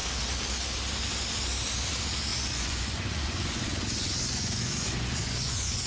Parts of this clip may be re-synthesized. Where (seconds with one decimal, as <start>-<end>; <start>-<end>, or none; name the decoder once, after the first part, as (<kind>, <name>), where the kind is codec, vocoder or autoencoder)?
2.3-5.9 (vocoder, Vocos)